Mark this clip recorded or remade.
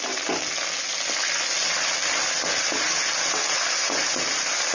recorded